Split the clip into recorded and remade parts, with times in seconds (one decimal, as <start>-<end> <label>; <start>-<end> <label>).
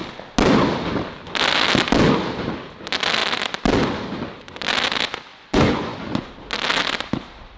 0.0-5.3 recorded; 5.3-6.3 remade; 6.3-7.6 recorded